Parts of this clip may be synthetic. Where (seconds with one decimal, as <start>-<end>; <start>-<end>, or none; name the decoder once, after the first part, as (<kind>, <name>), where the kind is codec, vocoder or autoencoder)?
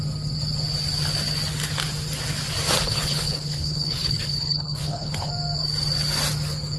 2.8-5.3 (codec, HILCodec)